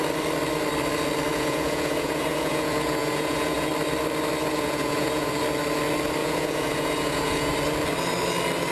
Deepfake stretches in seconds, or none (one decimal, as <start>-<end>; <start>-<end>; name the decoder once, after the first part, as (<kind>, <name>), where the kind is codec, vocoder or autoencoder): 1.3-3.7 (vocoder, Vocos); 4.4-5.3; 6.2-7.5

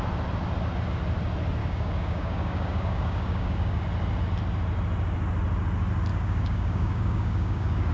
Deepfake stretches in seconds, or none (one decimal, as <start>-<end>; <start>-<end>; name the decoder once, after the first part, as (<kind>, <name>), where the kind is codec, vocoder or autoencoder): 1.6-3.8 (codec, DAC); 6.1-7.9

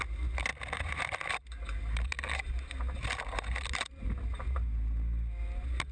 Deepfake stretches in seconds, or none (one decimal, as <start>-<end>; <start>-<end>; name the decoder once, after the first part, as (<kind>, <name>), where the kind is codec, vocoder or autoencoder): none

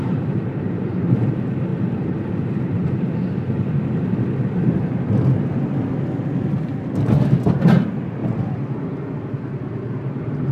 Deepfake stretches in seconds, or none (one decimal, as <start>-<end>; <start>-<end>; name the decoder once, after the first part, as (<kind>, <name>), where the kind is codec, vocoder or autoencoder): 0.0-10.5 (vocoder, BigVGAN v2)

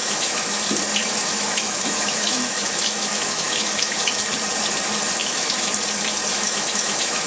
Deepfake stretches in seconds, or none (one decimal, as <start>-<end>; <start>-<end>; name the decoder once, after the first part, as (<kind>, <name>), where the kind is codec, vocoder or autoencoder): 0.0-0.6 (autoencoder, DAC-VAE); 1.0-4.1; 5.2-5.7; 6.3-7.3

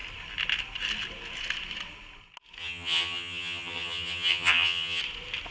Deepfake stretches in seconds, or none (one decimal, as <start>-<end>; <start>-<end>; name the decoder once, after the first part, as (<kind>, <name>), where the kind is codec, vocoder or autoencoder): 2.6-5.0 (vocoder, HiFi-GAN)